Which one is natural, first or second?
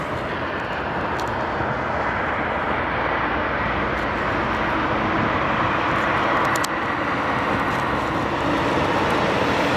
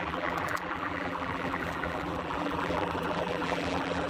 first